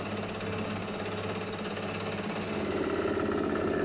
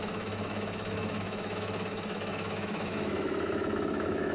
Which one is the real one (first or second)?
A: first